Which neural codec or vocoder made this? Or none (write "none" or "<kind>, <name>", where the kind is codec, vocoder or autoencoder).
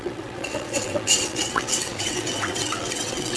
vocoder, WaveNeXt